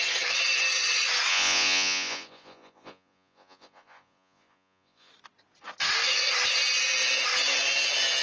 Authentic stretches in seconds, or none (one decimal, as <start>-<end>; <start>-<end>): 0.0-1.3; 5.1-8.2